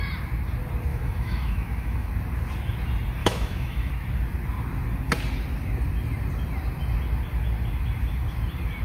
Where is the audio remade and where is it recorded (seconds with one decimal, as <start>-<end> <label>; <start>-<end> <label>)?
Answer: 0.0-0.9 recorded; 0.9-2.1 remade; 2.1-3.2 recorded; 3.2-3.9 remade; 3.9-8.8 recorded